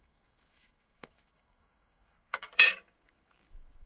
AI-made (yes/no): yes